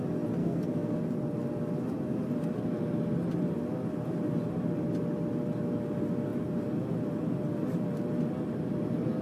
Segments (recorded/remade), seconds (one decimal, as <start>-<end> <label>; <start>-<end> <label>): 0.0-0.4 recorded; 0.4-1.0 remade; 1.0-9.2 recorded